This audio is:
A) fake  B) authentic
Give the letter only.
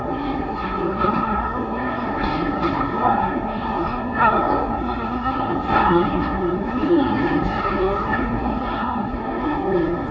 A